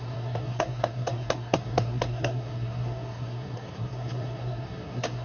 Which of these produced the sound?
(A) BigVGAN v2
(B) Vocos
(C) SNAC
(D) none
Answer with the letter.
C